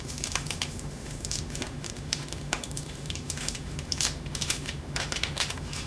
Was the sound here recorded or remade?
remade